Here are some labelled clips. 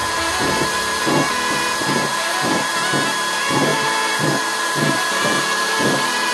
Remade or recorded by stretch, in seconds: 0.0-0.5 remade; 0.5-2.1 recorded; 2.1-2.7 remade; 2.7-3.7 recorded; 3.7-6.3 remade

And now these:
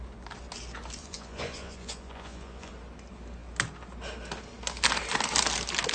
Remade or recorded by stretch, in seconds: 0.0-1.0 recorded; 1.0-2.7 remade; 2.7-5.9 recorded

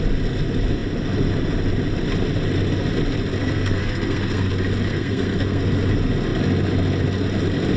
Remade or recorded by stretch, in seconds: 0.0-3.4 recorded; 3.4-4.5 remade; 4.5-4.9 recorded; 4.9-5.6 remade; 5.6-7.8 recorded

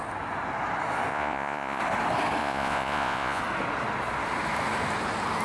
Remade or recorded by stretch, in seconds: 0.0-1.1 recorded; 1.1-1.8 remade; 1.8-2.4 recorded; 2.4-3.4 remade; 3.4-5.4 recorded

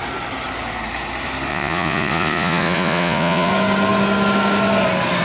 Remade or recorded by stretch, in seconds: 0.0-1.5 recorded; 1.5-3.5 remade; 3.5-5.2 recorded

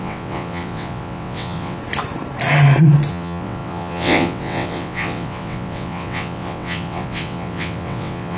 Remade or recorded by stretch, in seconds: 0.0-1.8 remade; 1.8-3.1 recorded; 3.1-8.4 remade

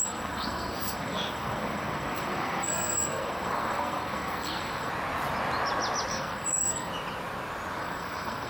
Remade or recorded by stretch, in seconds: 0.0-4.9 remade; 4.9-6.1 recorded; 6.1-6.9 remade; 6.9-7.8 recorded; 7.8-8.5 remade